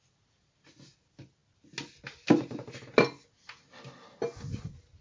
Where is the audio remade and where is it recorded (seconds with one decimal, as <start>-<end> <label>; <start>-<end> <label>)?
0.0-5.0 recorded